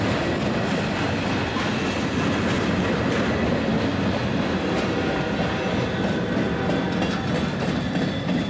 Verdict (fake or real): real